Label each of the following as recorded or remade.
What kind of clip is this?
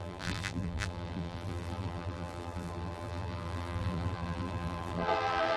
remade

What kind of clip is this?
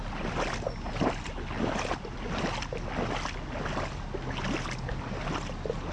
recorded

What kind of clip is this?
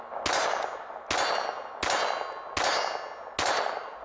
recorded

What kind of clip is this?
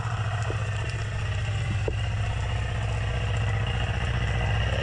recorded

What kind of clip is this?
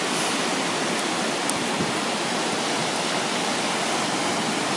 recorded